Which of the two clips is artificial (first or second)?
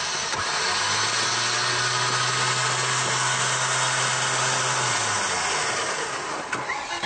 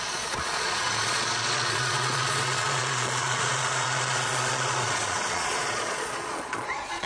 second